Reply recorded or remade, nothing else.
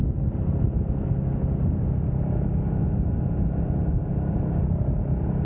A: recorded